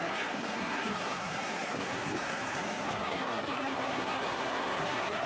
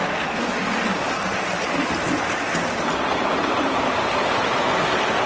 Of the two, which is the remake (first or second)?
first